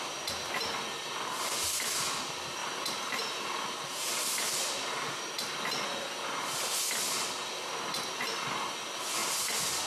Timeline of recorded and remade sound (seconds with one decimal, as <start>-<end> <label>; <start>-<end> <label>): 0.0-2.6 recorded; 2.6-5.2 remade; 5.2-9.9 recorded